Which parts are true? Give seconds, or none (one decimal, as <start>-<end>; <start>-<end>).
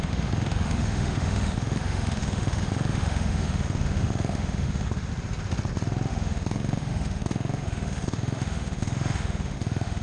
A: 5.1-6.1